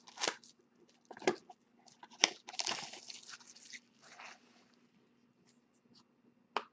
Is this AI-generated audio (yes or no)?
no